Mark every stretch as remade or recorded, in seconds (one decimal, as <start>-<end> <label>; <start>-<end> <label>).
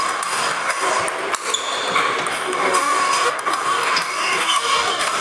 0.0-1.0 remade; 1.0-2.3 recorded; 2.3-5.2 remade